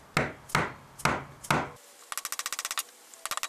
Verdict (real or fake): real